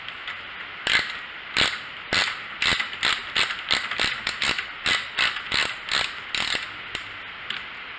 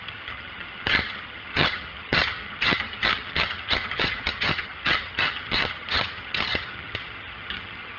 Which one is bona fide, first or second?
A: first